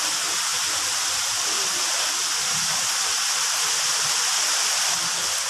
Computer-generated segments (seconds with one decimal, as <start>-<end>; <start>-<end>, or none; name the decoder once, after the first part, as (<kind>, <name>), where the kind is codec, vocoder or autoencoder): none